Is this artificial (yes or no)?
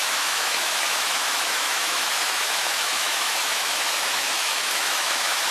yes